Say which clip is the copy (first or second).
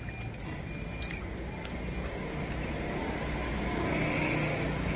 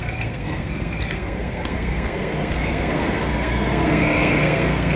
second